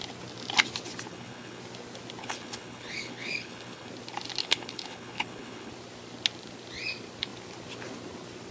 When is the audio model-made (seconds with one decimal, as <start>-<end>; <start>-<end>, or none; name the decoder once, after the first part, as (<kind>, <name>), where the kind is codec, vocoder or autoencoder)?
1.1-1.6 (codec, HILCodec); 2.2-3.9; 4.4-5.7